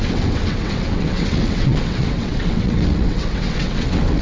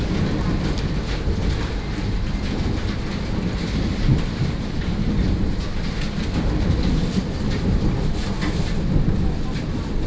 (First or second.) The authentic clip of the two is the second